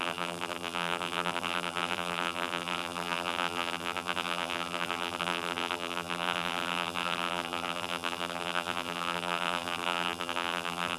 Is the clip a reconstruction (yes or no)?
yes